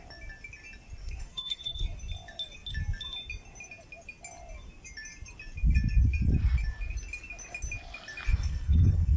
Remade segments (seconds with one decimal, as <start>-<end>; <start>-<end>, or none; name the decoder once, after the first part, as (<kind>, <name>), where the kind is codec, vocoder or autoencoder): 1.0-2.0 (codec, SNAC); 8.3-9.2